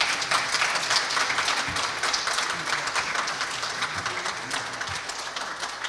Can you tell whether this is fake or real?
real